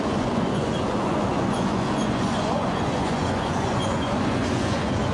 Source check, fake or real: fake